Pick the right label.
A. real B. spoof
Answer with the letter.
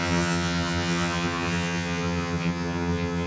B